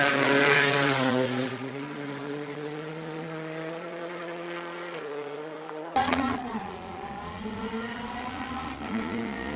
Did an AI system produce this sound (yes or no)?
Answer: yes